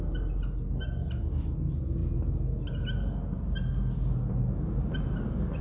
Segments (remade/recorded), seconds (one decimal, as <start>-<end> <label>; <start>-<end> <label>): 0.0-5.6 recorded